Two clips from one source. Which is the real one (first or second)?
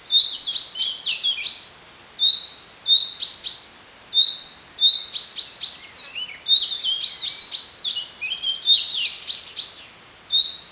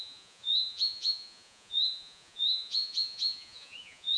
first